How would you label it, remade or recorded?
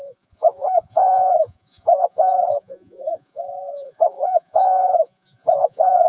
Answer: remade